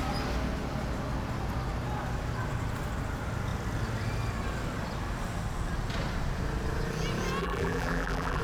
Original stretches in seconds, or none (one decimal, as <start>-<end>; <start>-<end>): 0.0-7.4